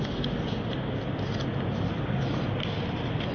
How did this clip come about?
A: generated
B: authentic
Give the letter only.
B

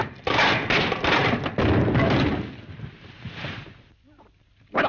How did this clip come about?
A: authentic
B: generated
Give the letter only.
A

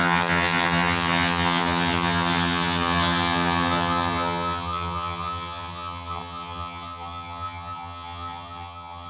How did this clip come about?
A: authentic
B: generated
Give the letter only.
B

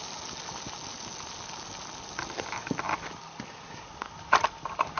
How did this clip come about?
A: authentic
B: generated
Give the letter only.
A